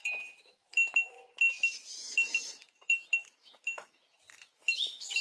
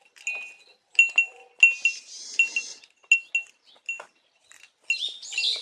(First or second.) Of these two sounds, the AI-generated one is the first